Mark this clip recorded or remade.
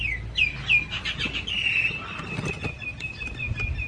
recorded